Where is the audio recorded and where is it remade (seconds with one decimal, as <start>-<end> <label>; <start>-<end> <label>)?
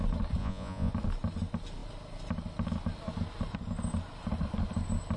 0.0-0.4 recorded; 0.4-0.9 remade; 0.9-5.2 recorded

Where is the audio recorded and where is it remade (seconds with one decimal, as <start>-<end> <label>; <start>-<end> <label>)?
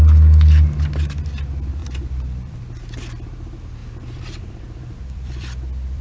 0.0-1.8 recorded; 1.8-2.6 remade; 2.6-3.8 recorded; 3.8-6.0 remade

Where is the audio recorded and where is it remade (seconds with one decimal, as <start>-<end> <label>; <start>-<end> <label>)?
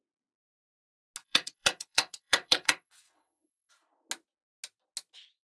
0.0-1.2 recorded; 1.2-3.7 remade; 3.7-5.5 recorded